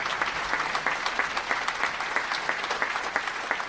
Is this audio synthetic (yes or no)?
no